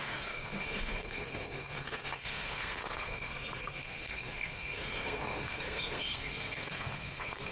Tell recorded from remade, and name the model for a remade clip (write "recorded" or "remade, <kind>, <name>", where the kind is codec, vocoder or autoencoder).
remade, codec, SNAC